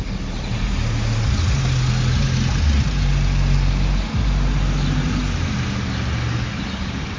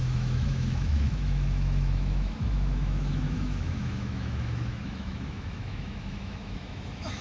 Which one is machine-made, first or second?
second